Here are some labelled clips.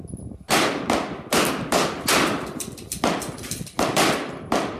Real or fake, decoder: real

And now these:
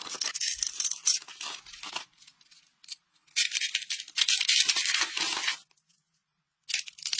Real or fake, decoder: real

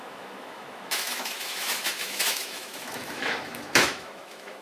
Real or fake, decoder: fake, autoencoder, DAC-VAE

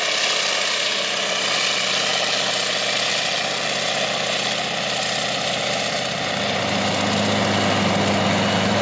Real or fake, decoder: real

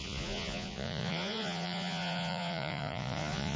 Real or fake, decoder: fake, vocoder, Vocos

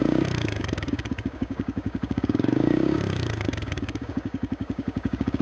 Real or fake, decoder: fake, codec, DAC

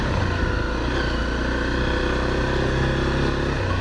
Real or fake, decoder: real